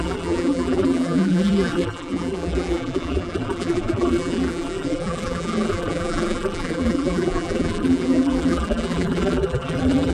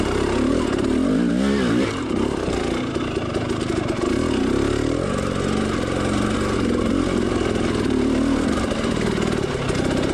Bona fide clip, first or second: second